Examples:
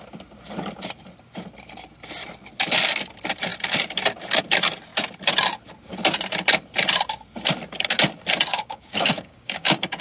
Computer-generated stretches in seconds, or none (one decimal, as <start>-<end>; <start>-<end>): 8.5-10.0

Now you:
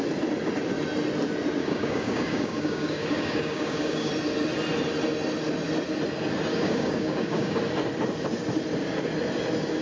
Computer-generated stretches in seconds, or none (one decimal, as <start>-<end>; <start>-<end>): 1.6-4.1; 6.5-7.6

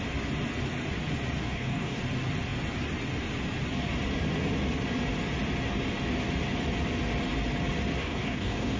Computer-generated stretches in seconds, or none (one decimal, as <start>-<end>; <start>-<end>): 1.4-2.0; 8.0-8.8

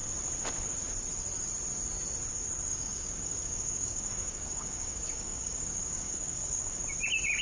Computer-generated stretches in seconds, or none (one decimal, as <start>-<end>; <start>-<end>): 2.7-6.8